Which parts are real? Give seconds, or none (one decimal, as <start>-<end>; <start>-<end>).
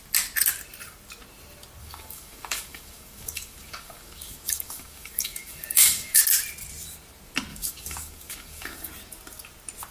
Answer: 0.0-1.8; 6.2-7.5; 8.9-9.9